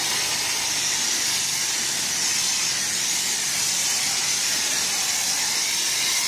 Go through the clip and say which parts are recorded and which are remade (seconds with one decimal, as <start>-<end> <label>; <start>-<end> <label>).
0.0-4.2 recorded; 4.2-4.9 remade; 4.9-6.3 recorded